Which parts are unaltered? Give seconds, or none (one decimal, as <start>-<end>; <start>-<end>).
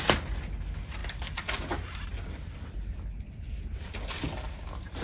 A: 0.0-5.0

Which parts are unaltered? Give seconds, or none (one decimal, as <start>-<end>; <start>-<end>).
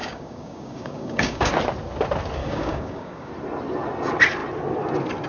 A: 1.5-2.4; 3.3-5.3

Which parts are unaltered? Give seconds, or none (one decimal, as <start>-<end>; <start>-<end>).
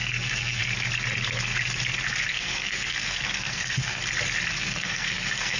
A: 0.6-2.3; 4.0-4.6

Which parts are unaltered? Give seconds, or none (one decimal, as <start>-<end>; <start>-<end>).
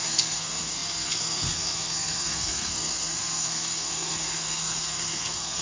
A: none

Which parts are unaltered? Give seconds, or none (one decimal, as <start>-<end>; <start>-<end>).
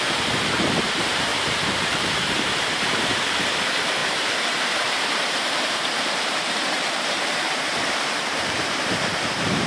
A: none